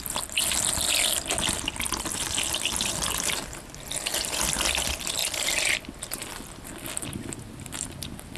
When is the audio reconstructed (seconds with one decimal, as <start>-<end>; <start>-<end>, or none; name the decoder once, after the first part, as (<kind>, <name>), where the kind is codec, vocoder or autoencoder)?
none